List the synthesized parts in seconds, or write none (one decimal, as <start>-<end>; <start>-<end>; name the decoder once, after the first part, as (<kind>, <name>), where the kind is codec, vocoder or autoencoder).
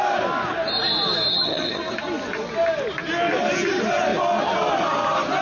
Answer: 1.3-1.8 (vocoder, HiFi-GAN)